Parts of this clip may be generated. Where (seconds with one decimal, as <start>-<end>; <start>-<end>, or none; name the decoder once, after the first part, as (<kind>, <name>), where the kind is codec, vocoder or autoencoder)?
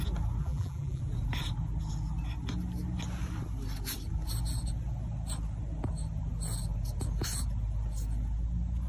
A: 0.4-1.0 (vocoder, BigVGAN v2)